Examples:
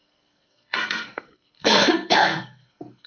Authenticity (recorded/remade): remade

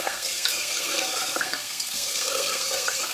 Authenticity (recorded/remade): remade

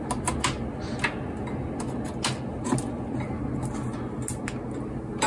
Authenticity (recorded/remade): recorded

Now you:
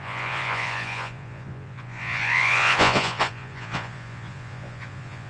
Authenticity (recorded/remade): remade